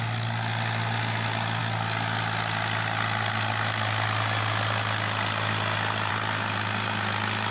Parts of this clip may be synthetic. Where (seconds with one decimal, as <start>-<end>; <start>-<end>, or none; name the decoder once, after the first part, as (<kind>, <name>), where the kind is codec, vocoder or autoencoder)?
none